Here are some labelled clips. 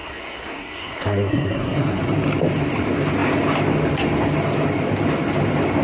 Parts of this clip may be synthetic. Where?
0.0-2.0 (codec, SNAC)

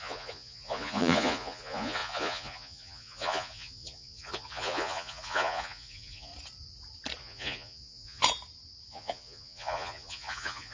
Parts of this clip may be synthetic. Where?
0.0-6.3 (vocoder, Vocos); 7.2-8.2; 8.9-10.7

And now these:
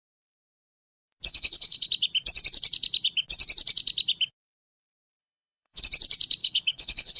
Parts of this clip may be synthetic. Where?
1.3-1.9 (codec, HILCodec); 5.2-5.8; 6.4-7.2

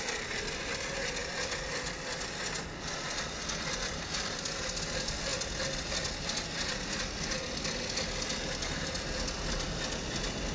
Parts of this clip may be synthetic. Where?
none

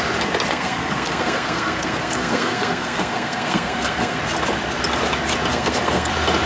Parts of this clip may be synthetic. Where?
0.5-4.2 (codec, SNAC); 5.5-6.1

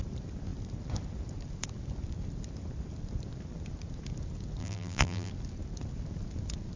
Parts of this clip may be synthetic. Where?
4.6-5.3 (vocoder, BigVGAN v2)